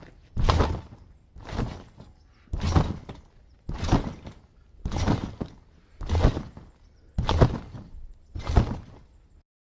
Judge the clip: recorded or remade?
recorded